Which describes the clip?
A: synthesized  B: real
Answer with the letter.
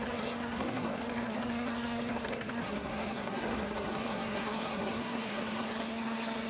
A